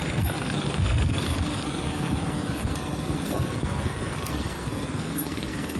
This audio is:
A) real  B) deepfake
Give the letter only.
B